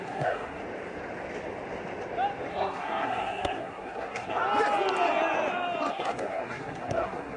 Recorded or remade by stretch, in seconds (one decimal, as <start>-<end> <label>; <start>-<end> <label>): 0.0-0.6 remade; 0.6-2.5 recorded; 2.5-4.4 remade; 4.4-5.9 recorded; 5.9-7.4 remade